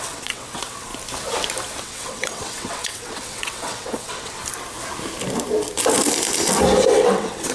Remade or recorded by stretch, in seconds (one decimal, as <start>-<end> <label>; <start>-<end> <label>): 0.0-0.9 remade; 0.9-1.8 recorded; 1.8-4.4 remade; 4.4-6.9 recorded; 6.9-7.5 remade